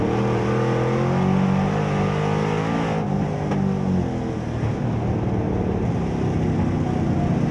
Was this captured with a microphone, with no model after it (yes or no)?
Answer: yes